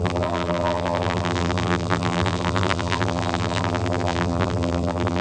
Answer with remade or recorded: remade